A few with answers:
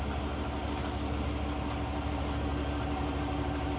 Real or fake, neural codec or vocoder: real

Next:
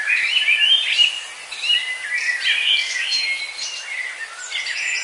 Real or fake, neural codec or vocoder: real